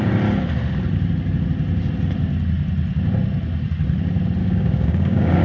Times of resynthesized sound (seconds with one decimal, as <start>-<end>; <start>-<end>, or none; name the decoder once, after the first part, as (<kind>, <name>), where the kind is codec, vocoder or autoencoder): 4.4-5.4 (codec, DAC)